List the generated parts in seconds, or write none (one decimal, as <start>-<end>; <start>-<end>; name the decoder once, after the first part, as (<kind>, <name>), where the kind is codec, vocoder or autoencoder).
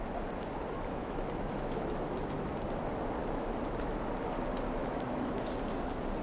1.0-2.5 (autoencoder, DAC-VAE); 3.2-4.0; 4.8-5.5